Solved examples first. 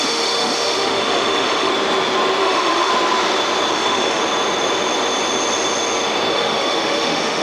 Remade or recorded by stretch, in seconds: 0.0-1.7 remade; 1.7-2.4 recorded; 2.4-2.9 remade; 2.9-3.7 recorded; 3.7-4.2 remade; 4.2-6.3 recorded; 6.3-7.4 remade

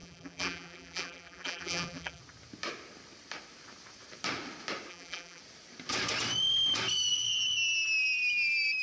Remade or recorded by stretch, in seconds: 0.0-2.2 remade; 2.2-4.9 recorded; 4.9-5.4 remade; 5.4-8.8 recorded

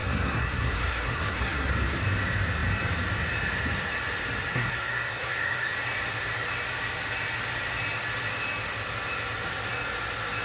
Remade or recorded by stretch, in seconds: 0.0-1.7 remade; 1.7-4.5 recorded; 4.5-5.7 remade; 5.7-10.4 recorded

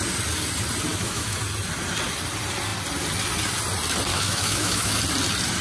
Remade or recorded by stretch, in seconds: 0.0-0.9 recorded; 0.9-1.4 remade; 1.4-4.1 recorded; 4.1-5.0 remade; 5.0-5.6 recorded

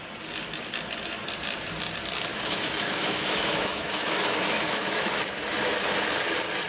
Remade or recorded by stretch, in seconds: 0.0-2.3 recorded; 2.3-5.1 remade; 5.1-6.7 recorded

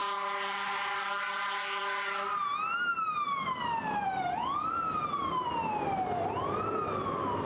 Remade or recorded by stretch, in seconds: 0.0-2.9 recorded; 2.9-5.8 remade; 5.8-7.5 recorded

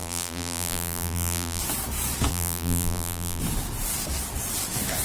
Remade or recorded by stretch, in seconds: 0.0-1.6 remade; 1.6-2.3 recorded; 2.3-3.4 remade; 3.4-5.0 recorded